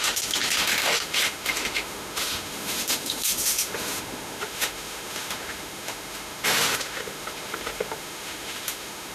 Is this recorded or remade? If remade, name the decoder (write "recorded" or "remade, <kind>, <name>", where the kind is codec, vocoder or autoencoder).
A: remade, autoencoder, DAC-VAE